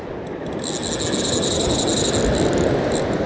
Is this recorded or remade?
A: recorded